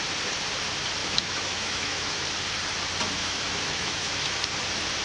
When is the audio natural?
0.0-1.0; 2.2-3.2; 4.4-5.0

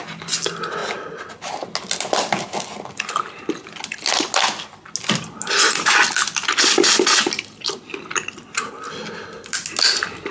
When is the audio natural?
0.0-10.3